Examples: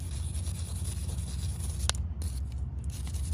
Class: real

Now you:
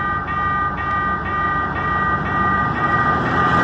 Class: real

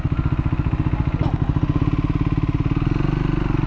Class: real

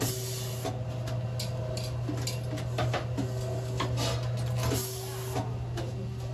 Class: real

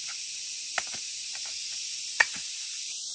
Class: real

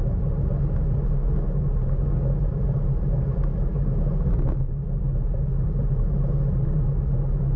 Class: real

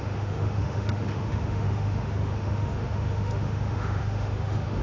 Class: fake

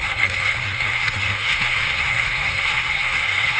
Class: fake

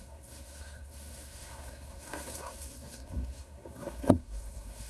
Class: fake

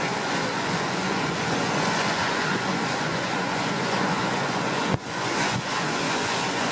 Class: fake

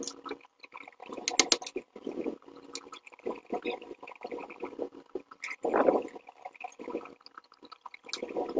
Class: real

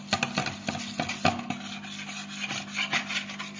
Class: real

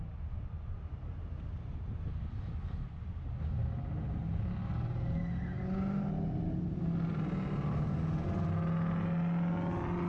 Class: real